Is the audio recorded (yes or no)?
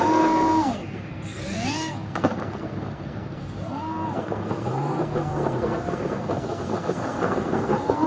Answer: no